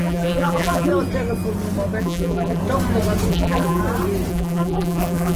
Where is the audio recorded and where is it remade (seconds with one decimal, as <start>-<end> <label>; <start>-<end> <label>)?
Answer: 0.0-0.9 remade; 0.9-2.0 recorded; 2.0-2.6 remade; 2.6-3.3 recorded; 3.3-3.8 remade; 3.8-4.3 recorded; 4.3-5.4 remade